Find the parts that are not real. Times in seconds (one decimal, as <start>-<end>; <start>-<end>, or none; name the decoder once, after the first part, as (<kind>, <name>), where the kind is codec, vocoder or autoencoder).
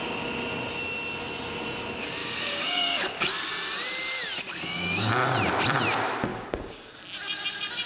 2.2-3.5 (codec, DAC); 4.5-5.1; 6.3-7.0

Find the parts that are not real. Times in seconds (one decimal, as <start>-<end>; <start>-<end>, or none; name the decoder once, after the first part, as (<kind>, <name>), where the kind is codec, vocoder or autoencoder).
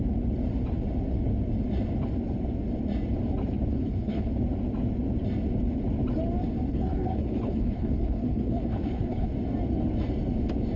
3.7-4.3 (codec, HILCodec); 6.7-9.3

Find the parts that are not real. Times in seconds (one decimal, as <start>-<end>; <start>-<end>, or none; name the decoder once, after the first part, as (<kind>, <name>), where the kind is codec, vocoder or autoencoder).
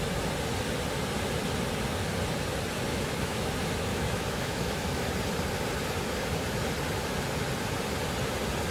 2.9-3.5 (autoencoder, DAC-VAE); 3.9-5.1